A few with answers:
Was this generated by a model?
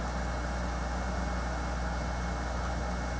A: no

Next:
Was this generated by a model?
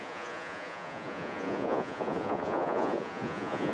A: yes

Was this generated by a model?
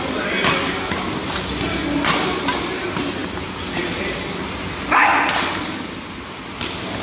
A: no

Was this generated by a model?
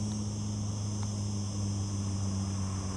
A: no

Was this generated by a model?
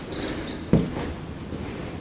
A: no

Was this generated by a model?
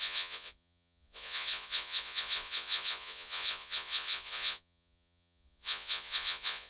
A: yes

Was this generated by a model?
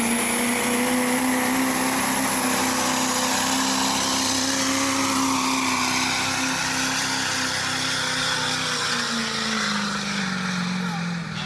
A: no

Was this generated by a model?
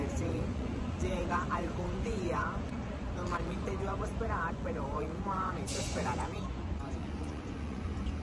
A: yes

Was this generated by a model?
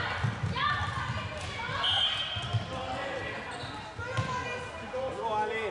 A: no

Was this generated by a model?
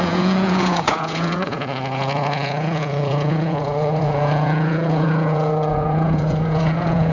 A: yes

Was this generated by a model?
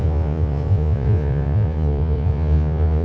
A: yes